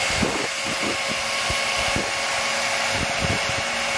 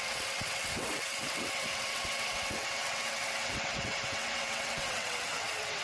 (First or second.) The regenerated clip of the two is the second